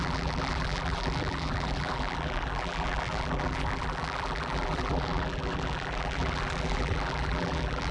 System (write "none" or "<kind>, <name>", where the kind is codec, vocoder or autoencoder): vocoder, BigVGAN v2